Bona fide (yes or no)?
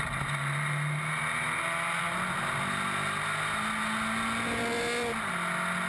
yes